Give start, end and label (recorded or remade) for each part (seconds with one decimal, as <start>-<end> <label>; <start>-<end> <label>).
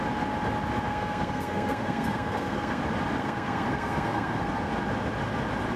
0.0-0.9 recorded; 0.9-2.8 remade; 2.8-3.2 recorded; 3.2-4.7 remade; 4.7-5.8 recorded